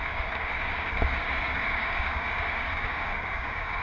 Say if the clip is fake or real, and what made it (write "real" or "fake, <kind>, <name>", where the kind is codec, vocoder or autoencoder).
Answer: fake, codec, DAC